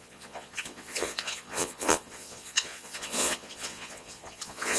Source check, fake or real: fake